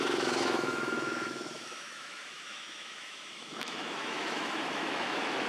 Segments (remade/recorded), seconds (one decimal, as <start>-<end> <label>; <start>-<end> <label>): 0.0-5.5 remade